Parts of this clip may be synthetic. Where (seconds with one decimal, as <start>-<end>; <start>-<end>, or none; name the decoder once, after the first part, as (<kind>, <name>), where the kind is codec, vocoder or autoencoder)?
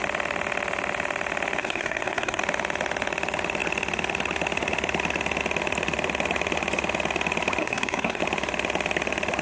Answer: 1.6-2.4 (codec, SNAC); 7.6-8.2